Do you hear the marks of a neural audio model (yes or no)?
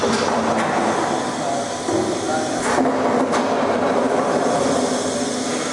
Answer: no